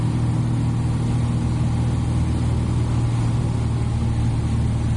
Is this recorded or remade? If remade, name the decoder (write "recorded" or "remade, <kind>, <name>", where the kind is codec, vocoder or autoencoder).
recorded